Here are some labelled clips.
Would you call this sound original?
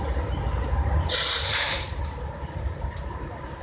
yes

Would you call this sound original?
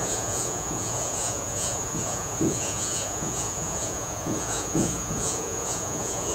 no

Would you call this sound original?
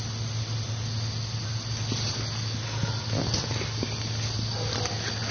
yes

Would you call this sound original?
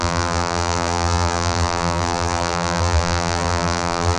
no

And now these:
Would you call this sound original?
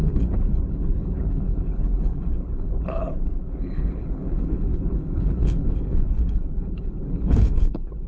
no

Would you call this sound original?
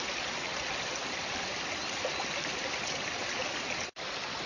yes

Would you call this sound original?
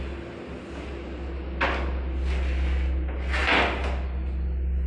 yes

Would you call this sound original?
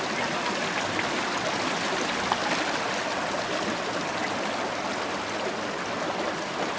yes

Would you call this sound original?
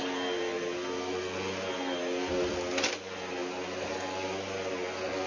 yes